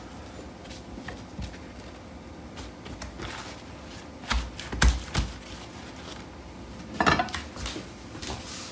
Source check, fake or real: real